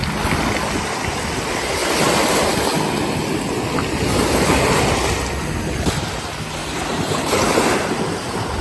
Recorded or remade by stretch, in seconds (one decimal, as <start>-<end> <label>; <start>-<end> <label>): 0.0-6.6 recorded; 6.6-7.5 remade; 7.5-8.6 recorded